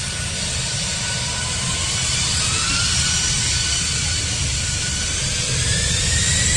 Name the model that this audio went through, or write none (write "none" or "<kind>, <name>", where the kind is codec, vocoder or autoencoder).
none